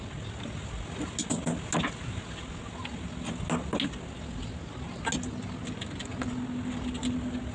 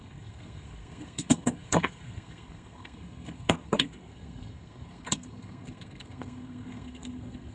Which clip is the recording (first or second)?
first